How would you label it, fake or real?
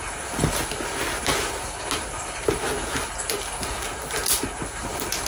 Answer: real